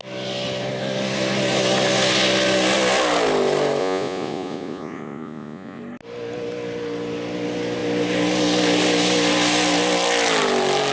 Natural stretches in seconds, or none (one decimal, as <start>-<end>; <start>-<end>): 0.0-3.8; 5.8-10.9